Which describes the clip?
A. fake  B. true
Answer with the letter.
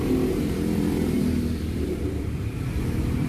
A